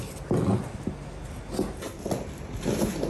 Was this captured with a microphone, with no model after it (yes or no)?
yes